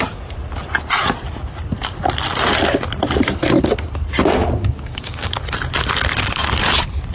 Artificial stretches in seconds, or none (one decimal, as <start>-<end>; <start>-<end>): 4.4-5.4